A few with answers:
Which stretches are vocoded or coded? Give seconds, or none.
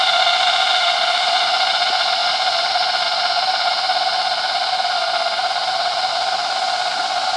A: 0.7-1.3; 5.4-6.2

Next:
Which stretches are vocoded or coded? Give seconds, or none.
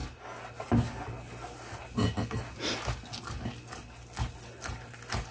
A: none